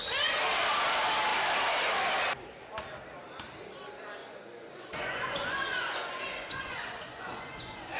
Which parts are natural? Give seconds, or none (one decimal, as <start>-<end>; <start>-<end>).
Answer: 0.0-4.2